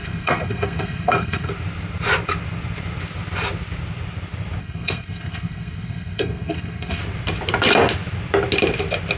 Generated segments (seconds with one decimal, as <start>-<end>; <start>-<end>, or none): 0.0-1.5; 4.6-7.0